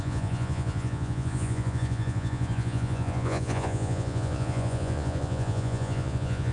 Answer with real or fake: fake